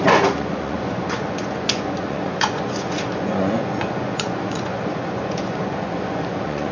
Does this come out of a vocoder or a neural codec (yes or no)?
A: yes